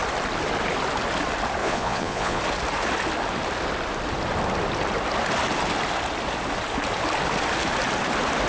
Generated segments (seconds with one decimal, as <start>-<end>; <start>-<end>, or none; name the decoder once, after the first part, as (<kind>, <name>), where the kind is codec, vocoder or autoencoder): 1.6-2.4 (vocoder, Vocos)